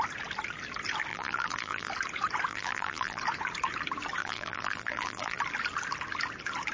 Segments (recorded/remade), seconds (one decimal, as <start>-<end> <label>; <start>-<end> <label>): 0.0-1.1 recorded; 1.1-1.9 remade; 1.9-2.5 recorded; 2.5-3.2 remade; 3.2-4.2 recorded; 4.2-5.4 remade; 5.4-6.7 recorded

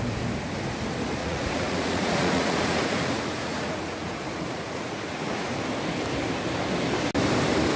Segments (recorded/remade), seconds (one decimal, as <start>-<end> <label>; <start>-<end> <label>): 0.0-1.2 recorded; 1.2-5.6 remade; 5.6-7.8 recorded

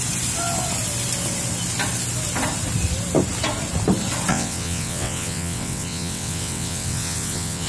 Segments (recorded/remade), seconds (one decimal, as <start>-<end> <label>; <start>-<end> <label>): 0.0-4.3 recorded; 4.3-7.7 remade

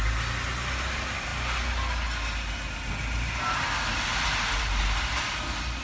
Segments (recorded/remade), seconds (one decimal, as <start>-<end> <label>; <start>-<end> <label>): 0.0-5.8 recorded

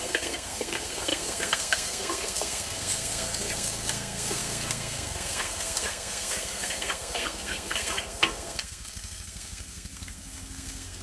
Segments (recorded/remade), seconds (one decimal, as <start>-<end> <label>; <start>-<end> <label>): 0.0-11.0 remade

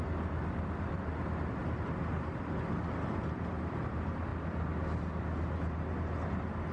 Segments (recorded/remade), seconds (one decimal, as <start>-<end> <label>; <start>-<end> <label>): 0.0-4.3 remade; 4.3-6.7 recorded

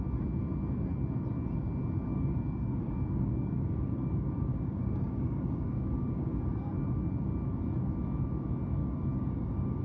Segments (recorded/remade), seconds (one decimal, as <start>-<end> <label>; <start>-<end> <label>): 0.0-2.1 recorded; 2.1-6.7 remade; 6.7-8.8 recorded; 8.8-9.8 remade

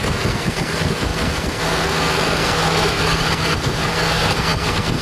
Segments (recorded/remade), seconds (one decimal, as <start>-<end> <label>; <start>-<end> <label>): 0.0-5.0 remade